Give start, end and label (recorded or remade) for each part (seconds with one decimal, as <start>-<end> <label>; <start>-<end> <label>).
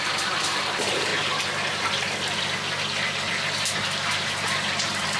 0.0-1.1 remade; 1.1-4.2 recorded; 4.2-5.2 remade